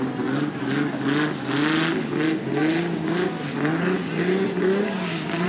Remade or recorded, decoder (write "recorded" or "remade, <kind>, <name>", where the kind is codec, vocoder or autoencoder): recorded